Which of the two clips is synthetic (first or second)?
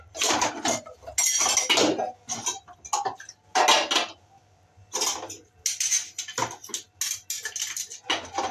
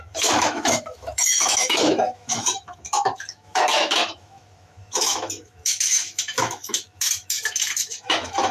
second